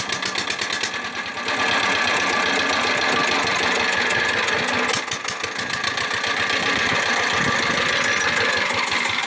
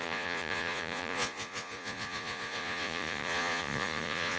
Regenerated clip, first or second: second